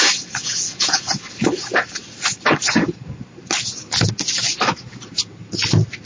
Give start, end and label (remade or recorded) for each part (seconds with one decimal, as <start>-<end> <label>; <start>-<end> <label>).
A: 0.0-0.4 recorded; 0.4-1.1 remade; 1.1-6.1 recorded